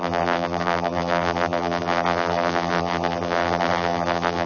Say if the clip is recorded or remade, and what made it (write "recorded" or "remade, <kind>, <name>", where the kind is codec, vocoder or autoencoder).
remade, vocoder, BigVGAN v2